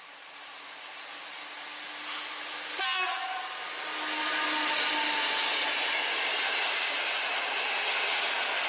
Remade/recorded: recorded